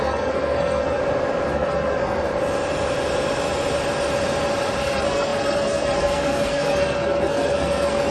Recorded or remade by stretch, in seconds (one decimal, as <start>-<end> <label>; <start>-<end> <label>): 0.0-1.0 remade; 1.0-1.5 recorded; 1.5-2.3 remade; 2.3-4.8 recorded; 4.8-8.1 remade